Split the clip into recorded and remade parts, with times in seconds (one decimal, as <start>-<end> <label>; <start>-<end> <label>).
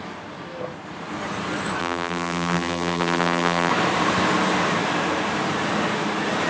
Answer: 0.0-1.8 recorded; 1.8-3.7 remade; 3.7-6.5 recorded